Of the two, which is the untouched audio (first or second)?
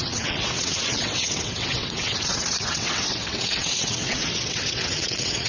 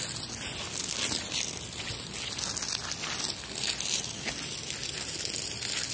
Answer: second